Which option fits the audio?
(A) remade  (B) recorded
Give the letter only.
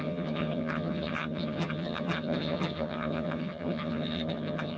A